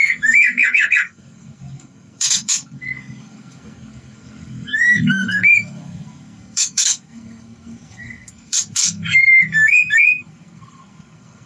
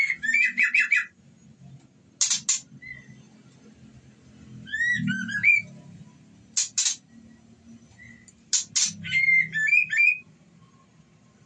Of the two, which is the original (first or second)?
second